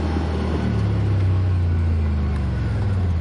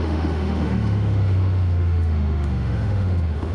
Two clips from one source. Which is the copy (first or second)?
second